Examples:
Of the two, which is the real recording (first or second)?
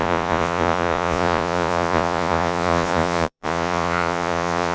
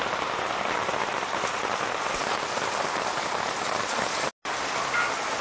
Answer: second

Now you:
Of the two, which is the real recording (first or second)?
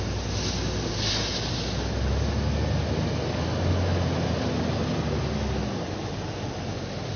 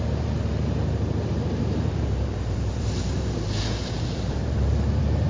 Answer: first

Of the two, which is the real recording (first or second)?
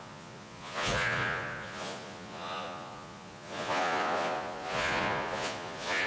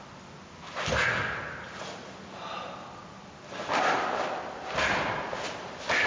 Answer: second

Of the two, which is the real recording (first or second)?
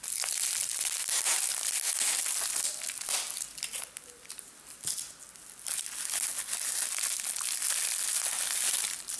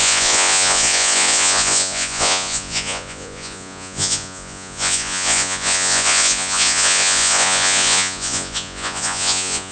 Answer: first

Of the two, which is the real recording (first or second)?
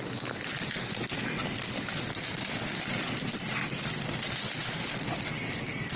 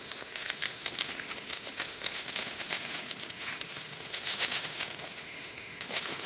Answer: first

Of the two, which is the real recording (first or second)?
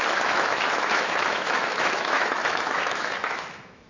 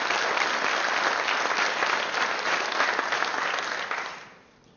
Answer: second